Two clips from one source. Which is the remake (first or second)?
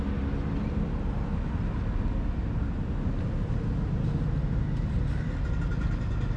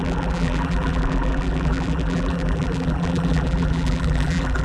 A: second